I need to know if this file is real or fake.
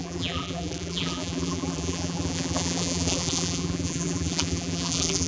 fake